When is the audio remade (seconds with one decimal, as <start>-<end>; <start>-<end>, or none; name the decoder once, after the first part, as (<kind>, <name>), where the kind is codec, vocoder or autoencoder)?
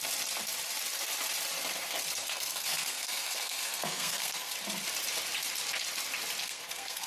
2.2-4.5 (codec, SNAC); 6.4-7.1